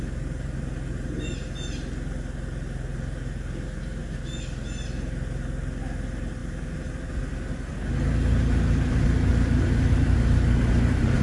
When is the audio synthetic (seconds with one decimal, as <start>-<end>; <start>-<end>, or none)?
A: none